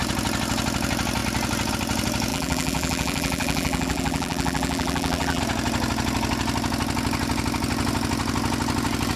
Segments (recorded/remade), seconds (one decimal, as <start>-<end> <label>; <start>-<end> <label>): 0.0-2.3 recorded; 2.3-5.4 remade; 5.4-9.2 recorded